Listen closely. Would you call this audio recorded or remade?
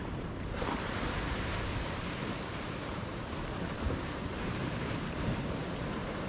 remade